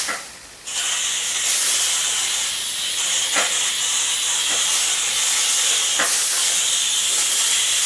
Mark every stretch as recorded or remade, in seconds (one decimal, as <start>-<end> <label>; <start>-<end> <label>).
0.0-7.2 recorded; 7.2-7.9 remade